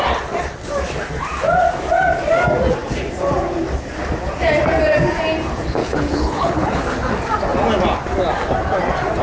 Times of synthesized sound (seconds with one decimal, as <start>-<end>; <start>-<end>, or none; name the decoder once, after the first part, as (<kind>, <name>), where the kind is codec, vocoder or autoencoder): 5.8-6.8 (codec, HILCodec)